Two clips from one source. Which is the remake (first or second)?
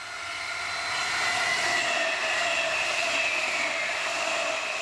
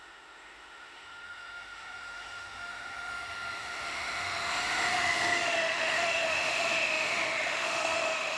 second